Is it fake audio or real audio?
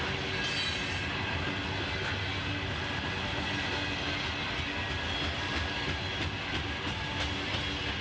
real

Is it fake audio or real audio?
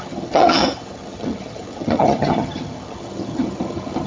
fake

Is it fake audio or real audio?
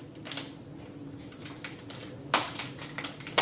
real